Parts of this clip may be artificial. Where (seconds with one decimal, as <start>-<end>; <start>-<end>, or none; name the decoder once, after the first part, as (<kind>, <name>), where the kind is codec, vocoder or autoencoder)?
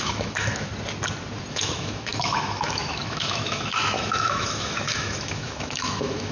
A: 0.0-0.7 (autoencoder, DAC-VAE); 1.5-6.3